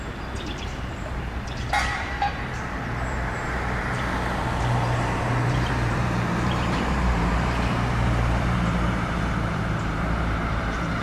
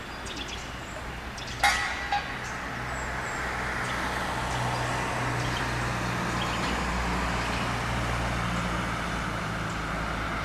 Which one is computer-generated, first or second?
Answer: first